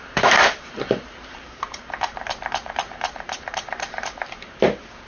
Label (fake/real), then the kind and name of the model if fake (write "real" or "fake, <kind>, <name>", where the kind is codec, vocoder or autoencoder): fake, vocoder, BigVGAN v2